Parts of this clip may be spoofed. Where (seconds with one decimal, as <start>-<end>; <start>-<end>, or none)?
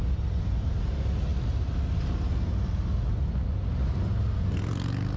none